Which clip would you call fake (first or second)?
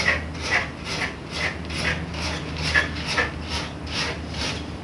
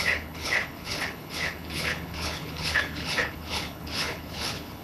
second